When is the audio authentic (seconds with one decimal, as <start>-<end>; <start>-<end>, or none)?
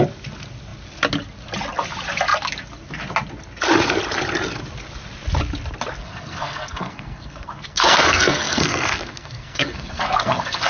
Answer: 0.0-6.0